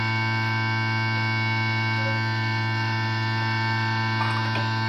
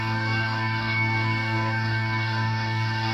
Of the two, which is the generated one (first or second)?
second